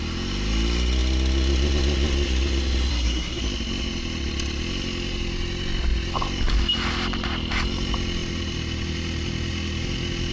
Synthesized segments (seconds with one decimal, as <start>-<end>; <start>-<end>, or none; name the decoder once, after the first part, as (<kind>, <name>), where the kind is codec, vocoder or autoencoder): 2.9-3.4 (codec, SNAC)

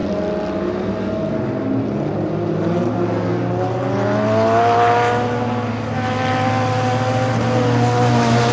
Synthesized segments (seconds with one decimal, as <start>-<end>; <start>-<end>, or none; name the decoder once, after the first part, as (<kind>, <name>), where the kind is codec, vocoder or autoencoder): none

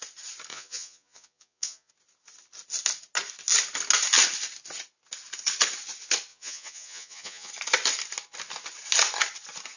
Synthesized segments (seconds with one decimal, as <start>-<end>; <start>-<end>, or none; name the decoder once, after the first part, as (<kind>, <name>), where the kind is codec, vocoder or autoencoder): 0.5-1.9 (vocoder, Vocos); 6.3-7.5